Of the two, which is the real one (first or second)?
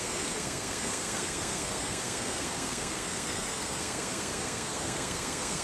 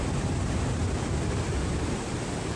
second